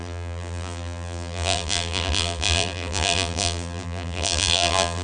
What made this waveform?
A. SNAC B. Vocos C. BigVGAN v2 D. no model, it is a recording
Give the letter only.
C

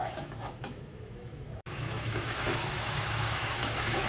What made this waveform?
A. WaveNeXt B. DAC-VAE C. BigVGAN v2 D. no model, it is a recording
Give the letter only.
B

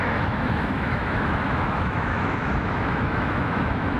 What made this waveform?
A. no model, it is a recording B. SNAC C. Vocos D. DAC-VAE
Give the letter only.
D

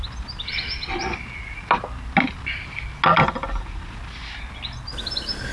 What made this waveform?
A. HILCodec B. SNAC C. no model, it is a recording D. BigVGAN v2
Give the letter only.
C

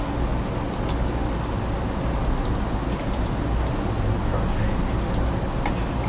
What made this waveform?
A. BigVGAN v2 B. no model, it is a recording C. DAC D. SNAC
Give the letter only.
B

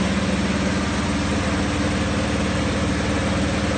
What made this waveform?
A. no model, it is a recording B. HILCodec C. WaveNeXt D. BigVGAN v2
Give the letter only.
A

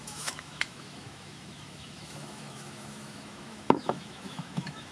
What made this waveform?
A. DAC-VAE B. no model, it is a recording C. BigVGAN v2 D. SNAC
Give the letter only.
A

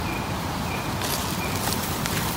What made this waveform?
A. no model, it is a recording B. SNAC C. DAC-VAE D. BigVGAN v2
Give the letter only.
A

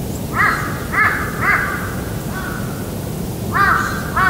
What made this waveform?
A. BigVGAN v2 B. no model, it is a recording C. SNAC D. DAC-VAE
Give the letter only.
B